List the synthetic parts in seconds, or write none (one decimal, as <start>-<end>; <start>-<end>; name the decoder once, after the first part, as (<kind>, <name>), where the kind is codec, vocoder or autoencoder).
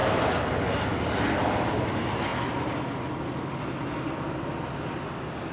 0.0-0.5 (vocoder, BigVGAN v2)